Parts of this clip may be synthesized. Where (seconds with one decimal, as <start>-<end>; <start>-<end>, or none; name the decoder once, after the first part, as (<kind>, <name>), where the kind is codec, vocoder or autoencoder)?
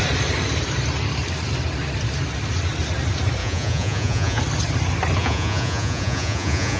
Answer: 3.4-4.4 (vocoder, Vocos); 5.2-6.8